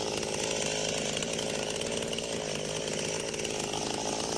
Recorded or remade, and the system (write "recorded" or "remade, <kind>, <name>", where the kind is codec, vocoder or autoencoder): recorded